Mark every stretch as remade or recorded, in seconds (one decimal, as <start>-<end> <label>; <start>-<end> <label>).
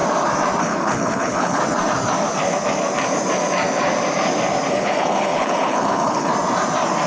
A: 0.0-0.6 recorded; 0.6-1.6 remade; 1.6-4.7 recorded; 4.7-6.3 remade; 6.3-7.1 recorded